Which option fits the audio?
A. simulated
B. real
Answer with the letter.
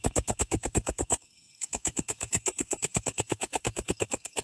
A